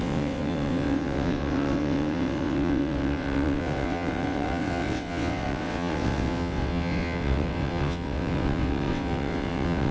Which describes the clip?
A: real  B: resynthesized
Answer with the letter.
B